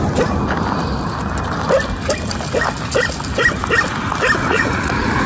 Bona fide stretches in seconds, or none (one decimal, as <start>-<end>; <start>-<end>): 0.0-4.4